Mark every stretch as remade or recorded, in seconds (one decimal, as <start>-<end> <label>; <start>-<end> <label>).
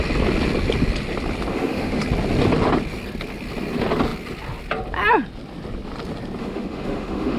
0.0-1.5 recorded; 1.5-2.0 remade; 2.0-6.4 recorded; 6.4-7.4 remade